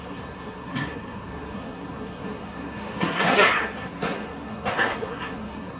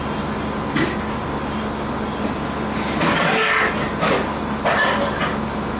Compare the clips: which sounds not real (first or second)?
first